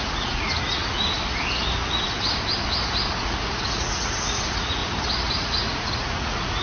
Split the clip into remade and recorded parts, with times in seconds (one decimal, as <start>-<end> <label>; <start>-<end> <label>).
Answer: 0.0-0.8 remade; 0.8-3.2 recorded; 3.2-4.8 remade; 4.8-5.3 recorded; 5.3-6.6 remade

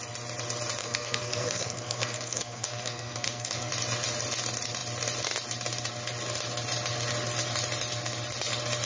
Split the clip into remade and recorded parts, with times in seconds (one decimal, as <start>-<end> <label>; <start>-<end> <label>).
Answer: 0.0-0.8 recorded; 0.8-3.7 remade; 3.7-8.9 recorded

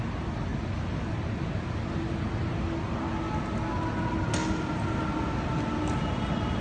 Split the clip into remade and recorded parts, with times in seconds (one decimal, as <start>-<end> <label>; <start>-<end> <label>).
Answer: 0.0-6.6 recorded

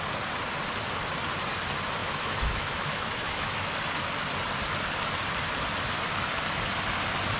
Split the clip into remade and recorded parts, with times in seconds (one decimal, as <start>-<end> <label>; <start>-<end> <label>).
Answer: 0.0-2.0 recorded; 2.0-3.7 remade; 3.7-7.4 recorded

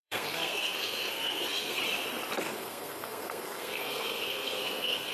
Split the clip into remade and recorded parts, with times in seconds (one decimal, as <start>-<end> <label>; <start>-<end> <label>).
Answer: 0.0-1.8 remade; 1.8-2.4 recorded; 2.4-5.1 remade

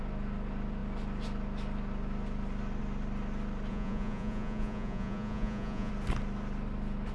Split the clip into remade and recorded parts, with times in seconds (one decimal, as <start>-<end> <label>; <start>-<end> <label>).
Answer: 0.0-3.7 recorded; 3.7-5.9 remade; 5.9-7.1 recorded

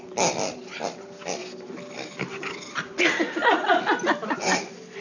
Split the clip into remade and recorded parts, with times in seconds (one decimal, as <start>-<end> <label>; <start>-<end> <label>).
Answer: 0.0-5.0 recorded

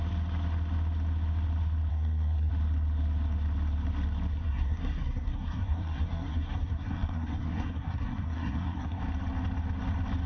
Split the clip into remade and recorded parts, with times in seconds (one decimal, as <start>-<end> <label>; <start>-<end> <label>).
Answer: 0.0-1.9 recorded; 1.9-2.5 remade; 2.5-4.3 recorded; 4.3-9.0 remade; 9.0-10.3 recorded